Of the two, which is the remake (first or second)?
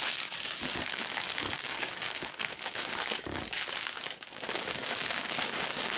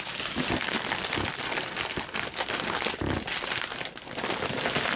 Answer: first